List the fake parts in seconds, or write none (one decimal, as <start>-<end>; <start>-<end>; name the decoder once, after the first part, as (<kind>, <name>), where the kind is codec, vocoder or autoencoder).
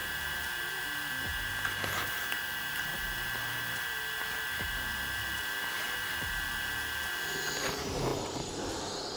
0.6-1.3 (vocoder, BigVGAN v2); 2.4-2.9; 4.9-8.1; 8.7-9.2